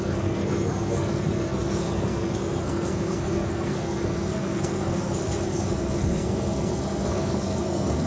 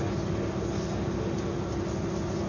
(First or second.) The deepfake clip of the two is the first